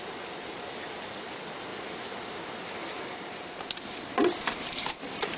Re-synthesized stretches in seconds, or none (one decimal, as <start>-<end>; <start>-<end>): 1.7-4.9